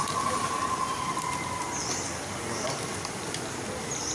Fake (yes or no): no